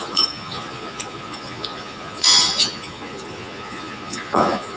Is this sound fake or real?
fake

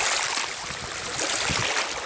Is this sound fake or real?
real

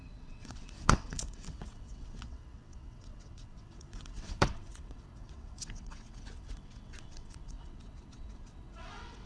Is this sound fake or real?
fake